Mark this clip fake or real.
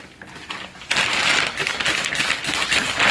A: real